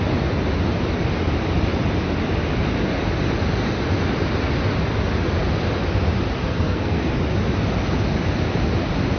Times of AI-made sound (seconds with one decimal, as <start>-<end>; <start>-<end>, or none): 6.4-7.1